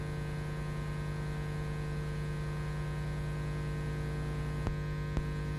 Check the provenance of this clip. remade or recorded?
recorded